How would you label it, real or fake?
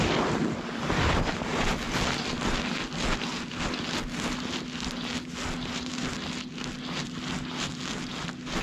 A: real